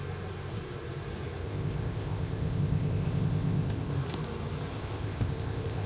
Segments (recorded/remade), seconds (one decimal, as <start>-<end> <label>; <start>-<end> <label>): 0.0-1.4 recorded; 1.4-3.9 remade; 3.9-4.7 recorded; 4.7-5.9 remade